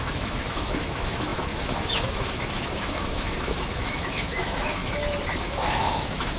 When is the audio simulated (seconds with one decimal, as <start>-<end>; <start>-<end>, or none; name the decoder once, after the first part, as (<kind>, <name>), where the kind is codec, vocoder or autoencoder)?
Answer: 0.0-4.8 (autoencoder, DAC-VAE); 5.4-6.4